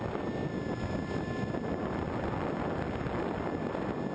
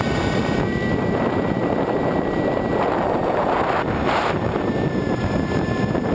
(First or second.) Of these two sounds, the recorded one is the first